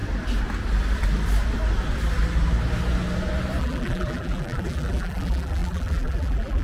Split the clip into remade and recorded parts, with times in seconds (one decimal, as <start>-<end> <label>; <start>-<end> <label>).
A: 0.0-3.6 recorded; 3.6-6.6 remade